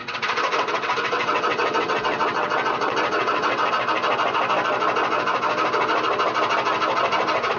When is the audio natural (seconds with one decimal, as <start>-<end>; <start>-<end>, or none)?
3.7-7.6

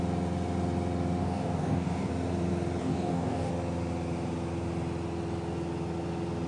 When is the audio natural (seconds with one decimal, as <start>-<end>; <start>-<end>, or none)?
0.0-1.2; 2.1-2.8; 3.5-6.5

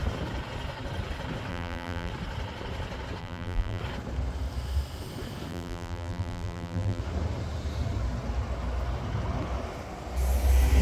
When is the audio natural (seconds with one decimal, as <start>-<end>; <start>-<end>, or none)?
0.0-1.5; 2.1-3.2; 3.8-5.5; 7.0-10.8

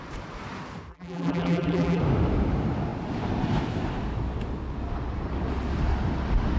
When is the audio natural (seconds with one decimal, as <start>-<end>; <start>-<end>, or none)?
0.0-0.9; 2.0-6.6

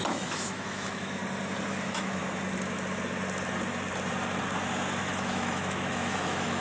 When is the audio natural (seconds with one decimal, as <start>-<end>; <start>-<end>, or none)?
1.2-1.7; 2.2-5.0

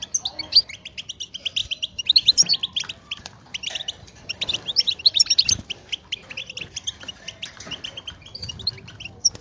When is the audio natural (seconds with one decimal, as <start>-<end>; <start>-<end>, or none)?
0.0-1.6; 6.5-9.4

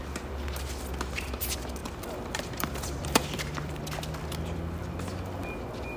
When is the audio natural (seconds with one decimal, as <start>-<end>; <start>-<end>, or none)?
0.0-1.8; 3.8-6.0

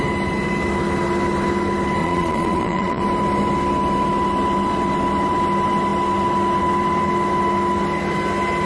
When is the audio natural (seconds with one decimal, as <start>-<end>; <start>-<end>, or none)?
0.0-2.0; 3.0-8.7